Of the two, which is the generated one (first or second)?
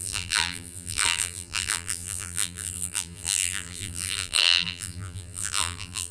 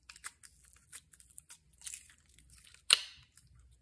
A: first